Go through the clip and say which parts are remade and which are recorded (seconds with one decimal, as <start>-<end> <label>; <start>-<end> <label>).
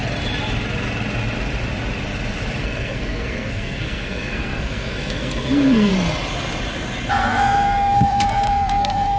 0.0-2.6 recorded; 2.6-5.9 remade; 5.9-7.1 recorded; 7.1-9.2 remade